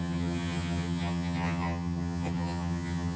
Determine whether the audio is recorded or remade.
remade